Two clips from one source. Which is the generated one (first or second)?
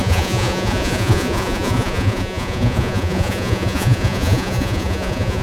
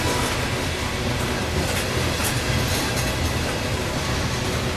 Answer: first